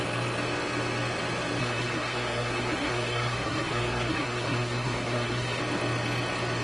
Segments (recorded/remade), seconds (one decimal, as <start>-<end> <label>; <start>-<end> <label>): 0.0-1.6 recorded; 1.6-5.6 remade; 5.6-6.6 recorded